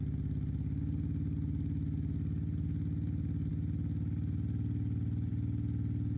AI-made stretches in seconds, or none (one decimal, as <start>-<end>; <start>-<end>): none